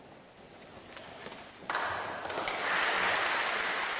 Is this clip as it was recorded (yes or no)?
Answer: yes